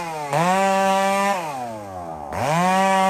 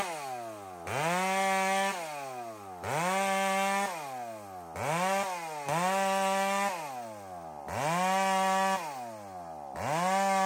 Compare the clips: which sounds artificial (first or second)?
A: first